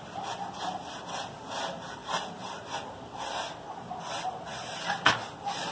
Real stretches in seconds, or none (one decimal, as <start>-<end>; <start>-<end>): 0.0-2.0; 2.7-5.7